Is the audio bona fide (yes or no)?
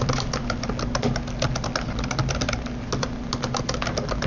yes